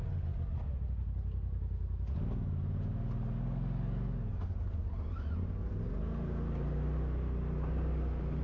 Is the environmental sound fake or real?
real